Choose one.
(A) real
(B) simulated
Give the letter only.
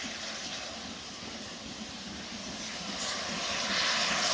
A